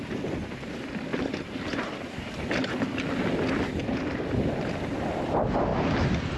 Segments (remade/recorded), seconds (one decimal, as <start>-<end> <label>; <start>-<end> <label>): 0.0-1.1 recorded; 1.1-2.5 remade; 2.5-3.8 recorded; 3.8-4.7 remade; 4.7-6.4 recorded